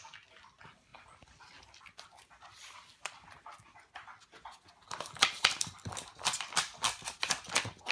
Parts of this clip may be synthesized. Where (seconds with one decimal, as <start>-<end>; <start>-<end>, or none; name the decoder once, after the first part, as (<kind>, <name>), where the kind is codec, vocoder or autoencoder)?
none